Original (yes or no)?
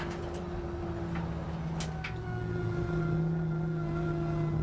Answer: yes